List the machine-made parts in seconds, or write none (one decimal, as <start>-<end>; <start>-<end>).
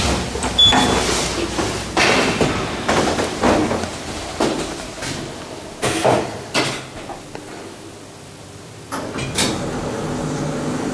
none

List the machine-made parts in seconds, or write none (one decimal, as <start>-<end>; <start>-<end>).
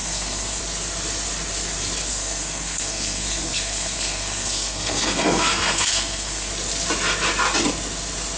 0.0-0.6; 2.1-6.5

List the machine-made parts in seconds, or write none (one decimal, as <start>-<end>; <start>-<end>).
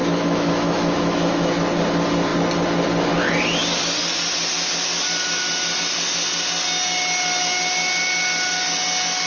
0.0-1.5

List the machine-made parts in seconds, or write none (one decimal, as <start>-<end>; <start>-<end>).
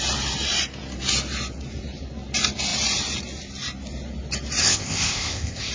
4.6-5.7